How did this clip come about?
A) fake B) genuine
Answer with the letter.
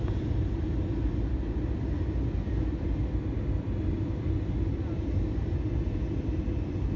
B